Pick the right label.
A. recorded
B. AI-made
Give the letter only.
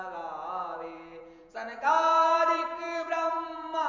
B